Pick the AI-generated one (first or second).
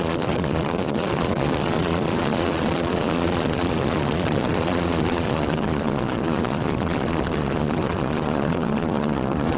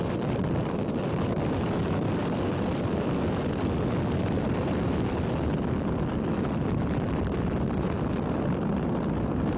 first